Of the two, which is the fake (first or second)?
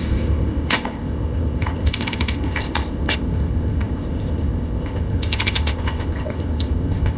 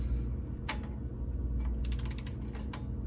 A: first